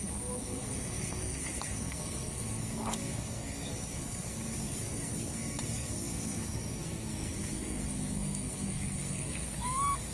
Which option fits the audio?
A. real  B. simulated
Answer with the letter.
B